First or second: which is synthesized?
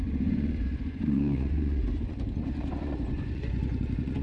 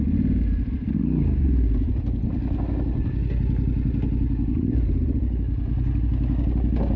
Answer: first